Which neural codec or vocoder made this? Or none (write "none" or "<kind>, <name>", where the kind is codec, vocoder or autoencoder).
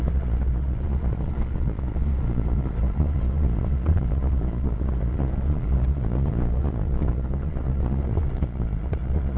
vocoder, Vocos